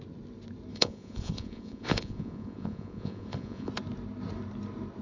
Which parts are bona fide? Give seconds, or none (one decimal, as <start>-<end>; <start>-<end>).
0.0-0.7; 3.7-5.0

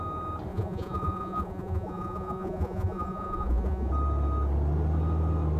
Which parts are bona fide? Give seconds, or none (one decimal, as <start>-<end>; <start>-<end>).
0.0-0.5; 3.9-5.6

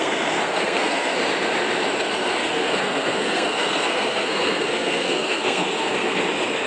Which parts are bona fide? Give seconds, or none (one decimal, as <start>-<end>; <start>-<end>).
1.2-2.4; 6.2-6.7

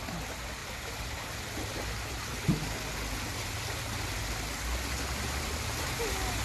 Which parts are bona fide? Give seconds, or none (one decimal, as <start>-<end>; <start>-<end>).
0.0-6.4

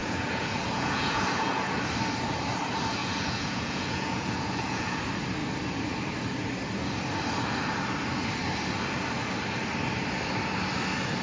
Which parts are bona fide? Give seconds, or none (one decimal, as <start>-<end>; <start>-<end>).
1.8-3.0; 5.0-11.2